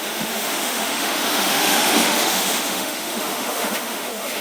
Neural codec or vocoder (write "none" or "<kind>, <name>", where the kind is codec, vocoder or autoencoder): autoencoder, DAC-VAE